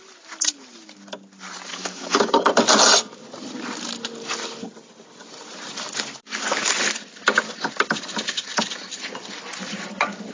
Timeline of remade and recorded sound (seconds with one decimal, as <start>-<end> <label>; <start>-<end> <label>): 0.0-1.7 recorded; 1.7-2.5 remade; 2.5-10.3 recorded